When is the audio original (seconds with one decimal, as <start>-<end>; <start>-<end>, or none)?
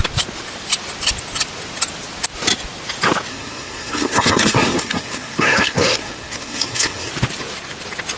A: 0.0-3.3; 7.1-8.2